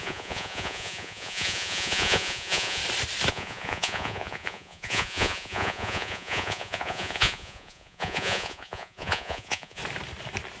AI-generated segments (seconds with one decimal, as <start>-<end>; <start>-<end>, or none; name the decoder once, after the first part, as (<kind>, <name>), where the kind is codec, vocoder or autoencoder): 0.0-2.8 (vocoder, Vocos); 3.3-9.8